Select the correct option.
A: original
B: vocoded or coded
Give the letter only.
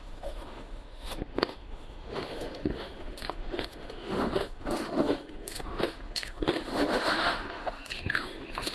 B